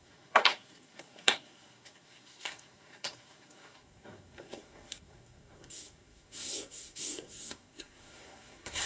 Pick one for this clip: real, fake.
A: fake